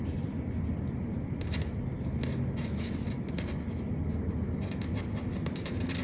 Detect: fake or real real